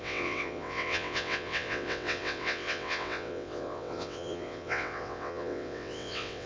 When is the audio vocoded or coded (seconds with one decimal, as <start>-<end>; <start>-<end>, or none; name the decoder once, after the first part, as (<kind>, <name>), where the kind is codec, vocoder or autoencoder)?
0.0-6.5 (vocoder, WaveNeXt)